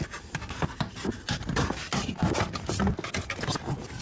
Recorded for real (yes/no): yes